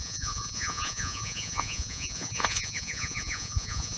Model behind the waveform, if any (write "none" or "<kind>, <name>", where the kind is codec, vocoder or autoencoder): vocoder, Vocos